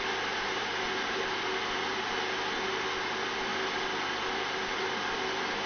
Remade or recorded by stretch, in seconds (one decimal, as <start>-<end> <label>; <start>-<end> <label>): 0.0-5.7 recorded